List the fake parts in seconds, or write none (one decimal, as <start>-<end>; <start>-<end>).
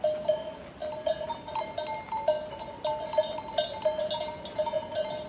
none